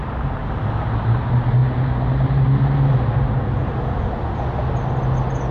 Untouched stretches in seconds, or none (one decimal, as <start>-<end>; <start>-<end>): 0.0-5.5